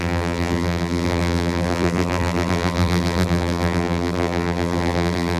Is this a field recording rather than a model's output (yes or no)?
no